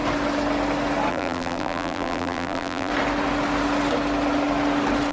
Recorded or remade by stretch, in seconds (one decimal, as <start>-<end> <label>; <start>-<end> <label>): 0.0-1.1 recorded; 1.1-2.9 remade; 2.9-5.1 recorded